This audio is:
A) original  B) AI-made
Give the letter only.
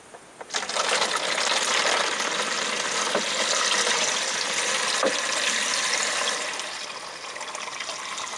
A